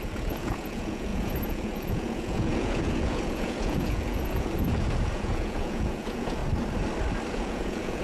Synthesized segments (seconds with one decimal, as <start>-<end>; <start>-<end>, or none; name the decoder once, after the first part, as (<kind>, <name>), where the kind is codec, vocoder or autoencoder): 0.0-6.4 (vocoder, Vocos); 7.3-8.0